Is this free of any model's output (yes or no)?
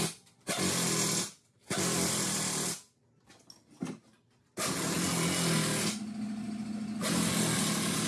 yes